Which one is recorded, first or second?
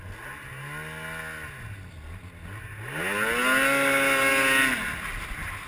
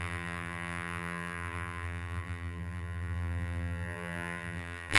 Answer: first